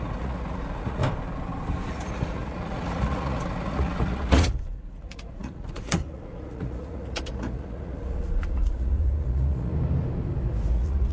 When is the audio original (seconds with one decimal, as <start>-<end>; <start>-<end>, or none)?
1.0-1.9; 9.7-10.7